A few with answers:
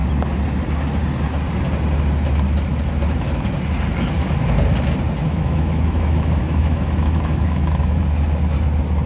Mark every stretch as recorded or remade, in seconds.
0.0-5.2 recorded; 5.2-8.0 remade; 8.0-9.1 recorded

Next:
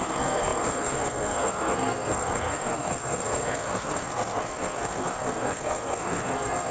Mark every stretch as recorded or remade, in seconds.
0.0-6.7 remade

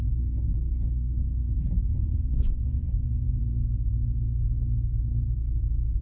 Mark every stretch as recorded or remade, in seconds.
0.0-1.9 recorded; 1.9-3.4 remade; 3.4-6.0 recorded

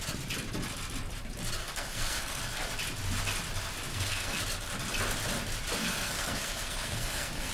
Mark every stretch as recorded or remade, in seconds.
0.0-1.6 recorded; 1.6-2.4 remade; 2.4-3.9 recorded; 3.9-4.4 remade; 4.4-5.8 recorded; 5.8-7.5 remade

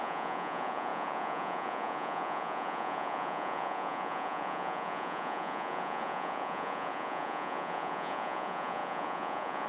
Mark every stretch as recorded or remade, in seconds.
0.0-9.7 remade

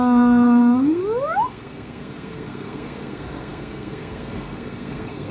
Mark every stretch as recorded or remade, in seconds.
0.0-1.0 remade; 1.0-1.5 recorded; 1.5-5.3 remade

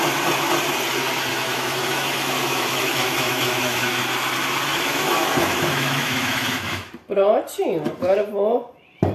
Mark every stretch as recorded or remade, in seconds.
0.0-1.3 recorded; 1.3-3.9 remade; 3.9-4.7 recorded; 4.7-6.9 remade; 6.9-9.1 recorded

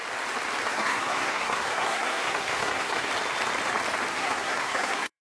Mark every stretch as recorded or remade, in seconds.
0.0-0.7 recorded; 0.7-3.1 remade; 3.1-4.1 recorded; 4.1-5.2 remade